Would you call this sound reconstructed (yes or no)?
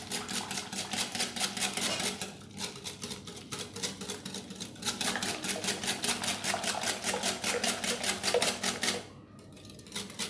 no